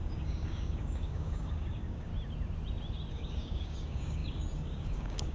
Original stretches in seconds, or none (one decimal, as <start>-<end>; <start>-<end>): 2.1-3.1